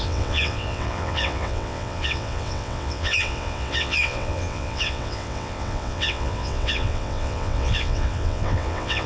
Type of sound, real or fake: fake